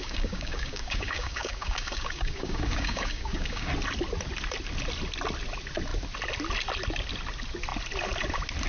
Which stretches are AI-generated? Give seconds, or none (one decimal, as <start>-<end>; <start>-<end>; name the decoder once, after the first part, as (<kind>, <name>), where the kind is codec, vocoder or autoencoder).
0.0-3.7 (codec, DAC)